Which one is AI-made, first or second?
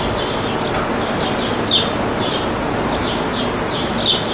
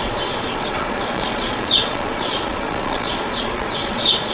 second